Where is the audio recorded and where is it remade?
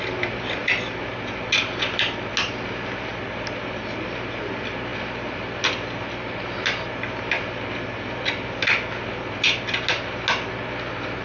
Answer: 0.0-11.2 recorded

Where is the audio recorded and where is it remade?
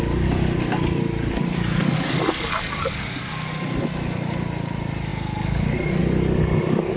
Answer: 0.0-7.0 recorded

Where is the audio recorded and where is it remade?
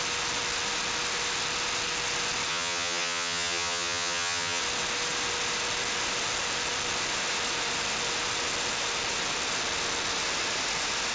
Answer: 0.0-2.5 recorded; 2.5-4.6 remade; 4.6-11.1 recorded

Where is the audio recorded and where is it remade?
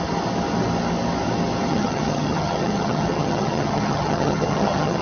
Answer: 0.0-1.7 recorded; 1.7-5.0 remade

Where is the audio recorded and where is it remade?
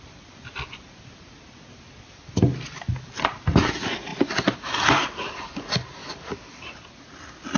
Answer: 0.0-7.6 recorded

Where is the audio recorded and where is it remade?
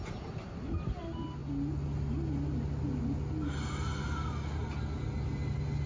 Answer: 0.0-5.9 recorded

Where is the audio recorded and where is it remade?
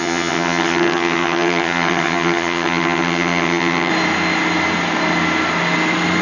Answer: 0.0-3.9 remade; 3.9-6.2 recorded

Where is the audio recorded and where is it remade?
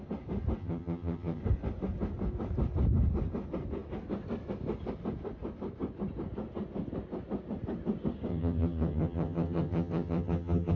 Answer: 0.0-0.6 recorded; 0.6-1.4 remade; 1.4-8.3 recorded; 8.3-10.8 remade